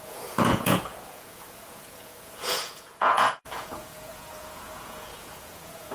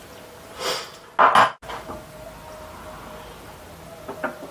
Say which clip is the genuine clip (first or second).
second